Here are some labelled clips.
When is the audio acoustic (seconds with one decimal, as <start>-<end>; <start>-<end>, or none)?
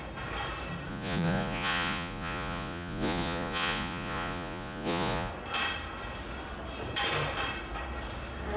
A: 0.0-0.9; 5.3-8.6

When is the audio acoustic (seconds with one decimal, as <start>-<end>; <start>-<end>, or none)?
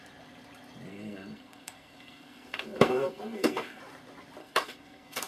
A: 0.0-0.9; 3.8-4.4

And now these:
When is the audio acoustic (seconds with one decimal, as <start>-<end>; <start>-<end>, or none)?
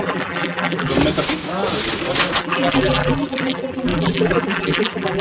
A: 0.9-2.4